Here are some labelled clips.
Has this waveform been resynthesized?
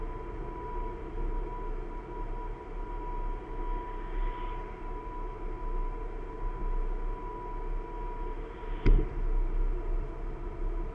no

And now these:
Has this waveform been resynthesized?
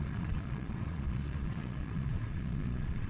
yes